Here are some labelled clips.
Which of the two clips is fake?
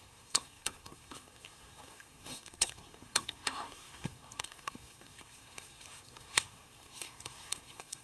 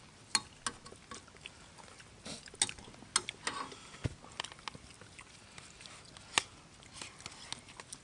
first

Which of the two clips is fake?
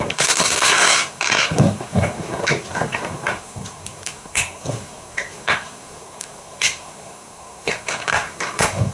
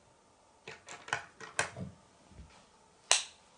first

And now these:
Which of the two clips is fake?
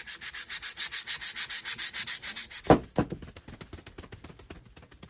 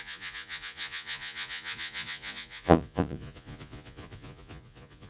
second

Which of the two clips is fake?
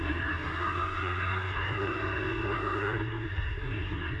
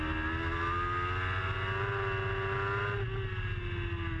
first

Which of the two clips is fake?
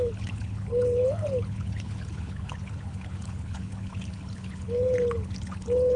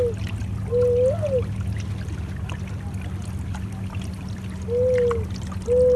first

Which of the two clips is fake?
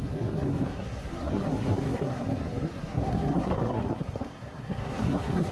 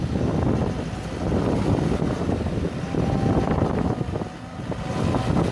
first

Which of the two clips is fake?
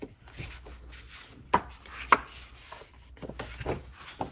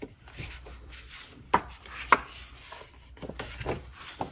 second